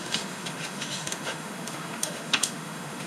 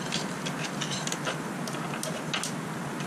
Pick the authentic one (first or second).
second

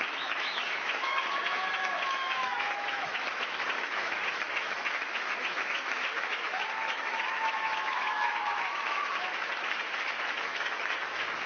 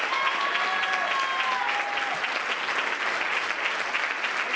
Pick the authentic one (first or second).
second